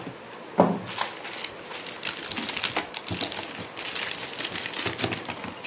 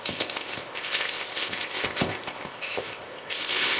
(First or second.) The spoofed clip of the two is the second